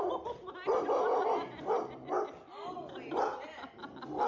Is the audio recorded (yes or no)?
yes